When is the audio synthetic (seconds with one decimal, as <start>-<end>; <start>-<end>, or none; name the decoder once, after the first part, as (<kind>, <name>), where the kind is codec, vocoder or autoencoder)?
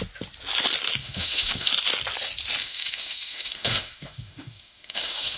1.0-1.7 (autoencoder, DAC-VAE); 2.6-5.4